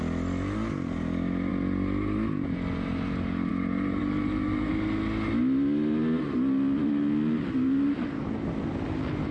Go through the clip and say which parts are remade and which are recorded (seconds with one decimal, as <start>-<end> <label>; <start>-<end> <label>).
0.0-4.0 recorded; 4.0-4.7 remade; 4.7-9.3 recorded